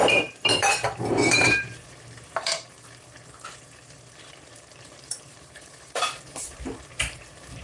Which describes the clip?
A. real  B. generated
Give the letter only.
B